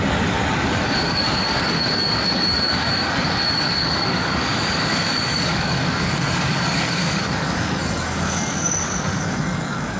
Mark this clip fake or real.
fake